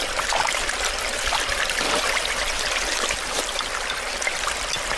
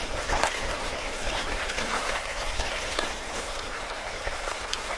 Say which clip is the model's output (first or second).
second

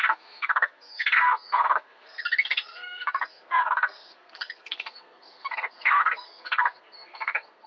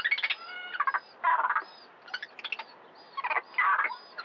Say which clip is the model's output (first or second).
first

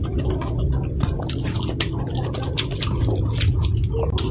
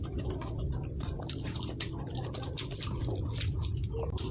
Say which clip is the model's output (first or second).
second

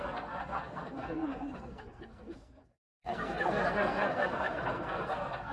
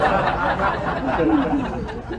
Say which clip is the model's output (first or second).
first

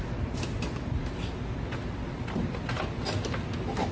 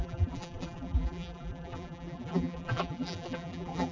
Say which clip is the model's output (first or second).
second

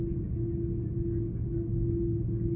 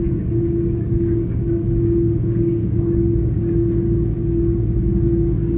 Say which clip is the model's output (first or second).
second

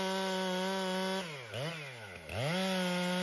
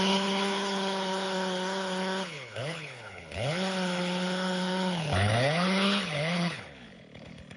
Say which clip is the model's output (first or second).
second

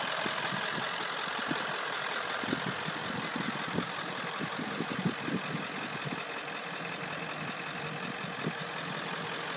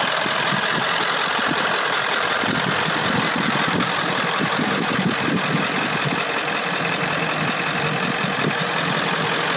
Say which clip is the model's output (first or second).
second